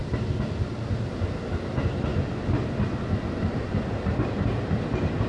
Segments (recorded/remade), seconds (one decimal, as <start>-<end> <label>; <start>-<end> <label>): 0.0-5.3 recorded